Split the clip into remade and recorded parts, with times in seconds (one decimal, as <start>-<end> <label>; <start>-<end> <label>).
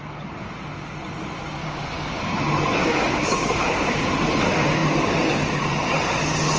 0.0-1.6 recorded; 1.6-2.3 remade; 2.3-2.8 recorded; 2.8-4.0 remade; 4.0-6.6 recorded